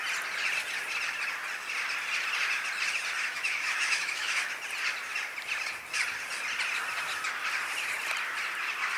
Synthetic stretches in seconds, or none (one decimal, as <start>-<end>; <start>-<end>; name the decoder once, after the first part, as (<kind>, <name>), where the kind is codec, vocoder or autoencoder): 3.3-4.5 (autoencoder, DAC-VAE)